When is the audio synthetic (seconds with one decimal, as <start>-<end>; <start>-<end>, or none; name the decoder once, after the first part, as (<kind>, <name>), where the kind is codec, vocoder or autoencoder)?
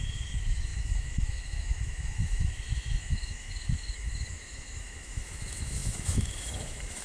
0.0-7.0 (autoencoder, DAC-VAE)